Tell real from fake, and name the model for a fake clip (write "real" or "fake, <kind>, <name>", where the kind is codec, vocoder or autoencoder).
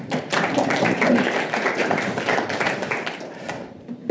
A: fake, vocoder, BigVGAN v2